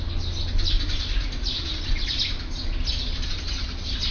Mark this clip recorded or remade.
recorded